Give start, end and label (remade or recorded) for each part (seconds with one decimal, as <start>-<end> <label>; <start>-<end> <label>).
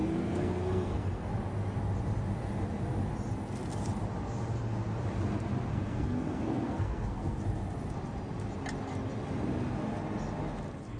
0.0-1.3 remade; 1.3-5.7 recorded; 5.7-7.4 remade; 7.4-11.0 recorded